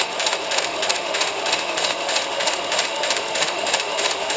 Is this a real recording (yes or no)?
no